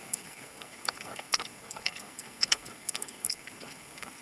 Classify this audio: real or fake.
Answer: fake